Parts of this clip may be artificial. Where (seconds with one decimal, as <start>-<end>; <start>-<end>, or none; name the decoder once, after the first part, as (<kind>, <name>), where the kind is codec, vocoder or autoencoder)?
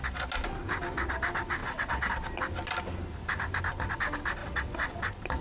1.6-2.1 (vocoder, WaveNeXt); 4.4-5.0